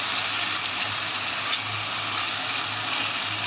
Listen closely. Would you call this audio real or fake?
real